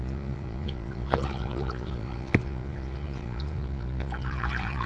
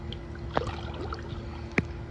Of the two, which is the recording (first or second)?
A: second